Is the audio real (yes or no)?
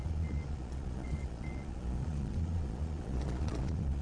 no